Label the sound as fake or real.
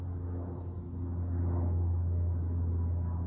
real